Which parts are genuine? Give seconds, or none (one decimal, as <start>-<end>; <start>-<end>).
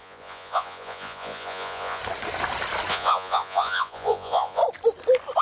2.0-2.9; 4.6-5.4